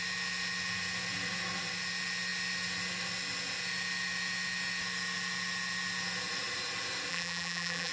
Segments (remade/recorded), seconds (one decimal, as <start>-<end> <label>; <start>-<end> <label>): 0.0-7.1 recorded; 7.1-7.9 remade